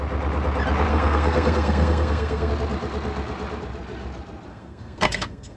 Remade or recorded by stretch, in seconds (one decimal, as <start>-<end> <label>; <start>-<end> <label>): 0.0-0.9 recorded; 0.9-2.5 remade; 2.5-4.5 recorded; 4.5-5.6 remade